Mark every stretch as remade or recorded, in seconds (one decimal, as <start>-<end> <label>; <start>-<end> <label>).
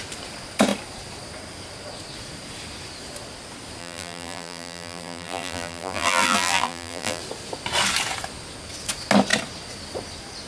0.0-3.8 recorded; 3.8-7.2 remade; 7.2-10.5 recorded